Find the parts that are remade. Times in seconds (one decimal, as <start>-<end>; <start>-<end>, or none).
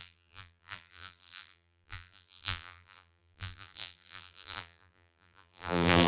0.0-6.1